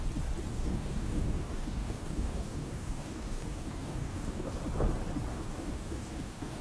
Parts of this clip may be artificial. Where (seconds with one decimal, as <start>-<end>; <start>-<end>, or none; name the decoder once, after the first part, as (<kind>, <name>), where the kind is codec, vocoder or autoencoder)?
0.5-4.5 (codec, DAC); 5.3-6.6